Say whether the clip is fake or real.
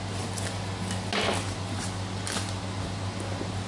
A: real